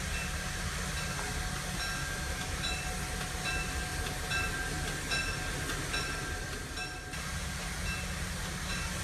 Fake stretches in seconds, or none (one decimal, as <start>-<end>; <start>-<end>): 2.0-2.6